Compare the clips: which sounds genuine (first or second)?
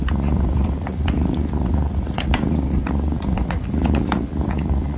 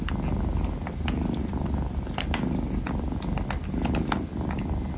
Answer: second